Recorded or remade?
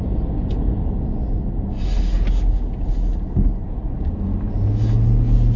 recorded